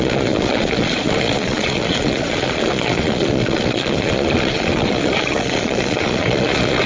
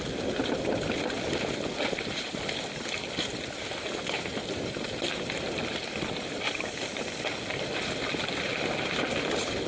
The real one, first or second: second